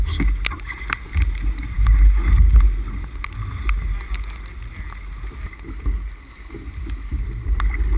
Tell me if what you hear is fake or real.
real